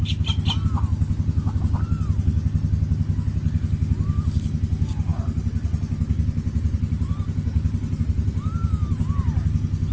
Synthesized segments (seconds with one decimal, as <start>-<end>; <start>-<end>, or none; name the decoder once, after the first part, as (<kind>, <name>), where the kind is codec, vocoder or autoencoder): none